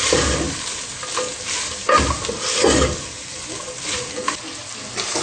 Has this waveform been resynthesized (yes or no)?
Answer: no